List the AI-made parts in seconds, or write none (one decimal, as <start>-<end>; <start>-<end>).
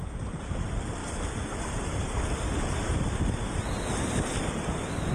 none